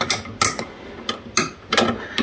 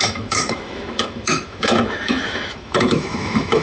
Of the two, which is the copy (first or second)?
second